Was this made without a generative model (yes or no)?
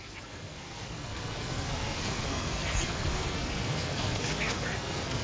no